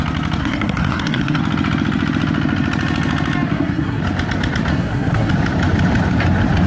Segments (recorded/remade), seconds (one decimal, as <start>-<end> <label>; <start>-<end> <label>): 0.0-0.4 recorded; 0.4-1.4 remade; 1.4-3.5 recorded; 3.5-4.0 remade; 4.0-4.7 recorded; 4.7-5.3 remade; 5.3-6.7 recorded